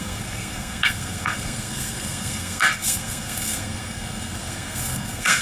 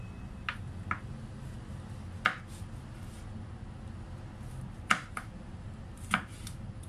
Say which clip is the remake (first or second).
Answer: first